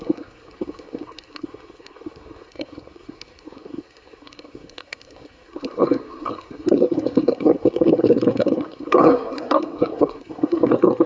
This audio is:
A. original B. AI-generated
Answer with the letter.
B